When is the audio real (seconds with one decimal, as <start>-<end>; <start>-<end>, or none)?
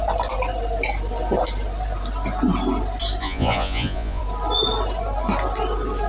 0.0-3.2; 4.2-6.1